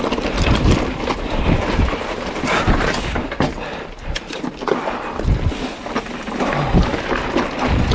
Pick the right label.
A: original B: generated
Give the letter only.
A